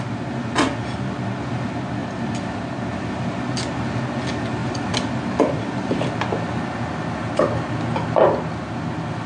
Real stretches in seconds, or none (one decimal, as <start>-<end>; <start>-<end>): 0.0-2.0; 3.5-4.6; 5.9-9.3